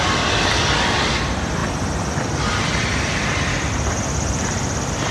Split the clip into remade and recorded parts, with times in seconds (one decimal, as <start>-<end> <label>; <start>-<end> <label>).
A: 0.0-1.6 recorded; 1.6-5.1 remade

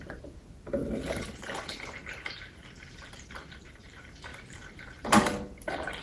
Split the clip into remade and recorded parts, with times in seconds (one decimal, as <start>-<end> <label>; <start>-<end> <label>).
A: 0.0-6.0 recorded

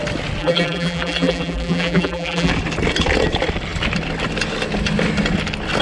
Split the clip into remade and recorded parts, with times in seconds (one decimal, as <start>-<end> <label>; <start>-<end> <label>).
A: 0.0-0.4 recorded; 0.4-2.5 remade; 2.5-5.8 recorded